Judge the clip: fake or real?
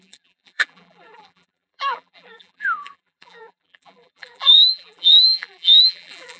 fake